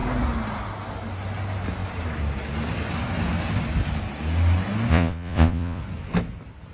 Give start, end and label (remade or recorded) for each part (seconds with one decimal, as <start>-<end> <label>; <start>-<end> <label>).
0.0-4.9 recorded; 4.9-5.8 remade; 5.8-6.7 recorded

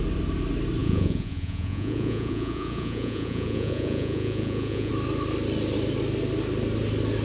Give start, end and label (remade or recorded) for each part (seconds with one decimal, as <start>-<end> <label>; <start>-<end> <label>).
0.0-0.8 recorded; 0.8-4.9 remade; 4.9-7.2 recorded

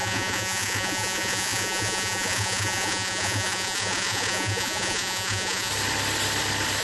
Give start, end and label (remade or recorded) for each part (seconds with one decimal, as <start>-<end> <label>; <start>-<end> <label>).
0.0-5.7 remade; 5.7-6.8 recorded

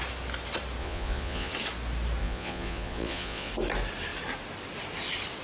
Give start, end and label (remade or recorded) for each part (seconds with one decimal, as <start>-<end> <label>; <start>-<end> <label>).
0.0-0.8 recorded; 0.8-1.5 remade; 1.5-2.2 recorded; 2.2-3.5 remade; 3.5-5.4 recorded

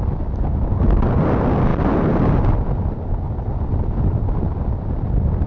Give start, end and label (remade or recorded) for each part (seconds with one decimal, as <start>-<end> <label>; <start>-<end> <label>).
0.0-5.5 recorded